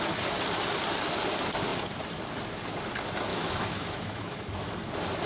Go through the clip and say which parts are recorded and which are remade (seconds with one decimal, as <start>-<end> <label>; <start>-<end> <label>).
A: 0.0-3.3 recorded; 3.3-4.7 remade; 4.7-5.3 recorded